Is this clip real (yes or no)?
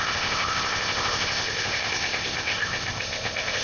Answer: no